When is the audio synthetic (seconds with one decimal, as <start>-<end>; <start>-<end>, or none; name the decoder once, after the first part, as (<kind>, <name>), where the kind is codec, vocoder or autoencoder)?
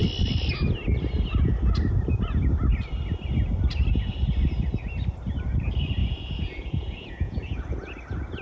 6.0-7.6 (vocoder, Vocos)